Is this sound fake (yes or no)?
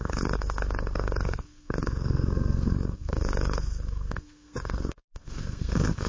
yes